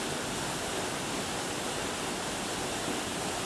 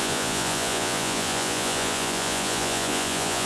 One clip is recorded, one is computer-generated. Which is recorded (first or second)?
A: first